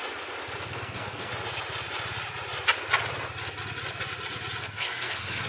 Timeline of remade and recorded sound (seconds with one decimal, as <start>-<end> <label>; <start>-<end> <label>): 0.0-0.7 recorded; 0.7-1.3 remade; 1.3-4.6 recorded; 4.6-5.5 remade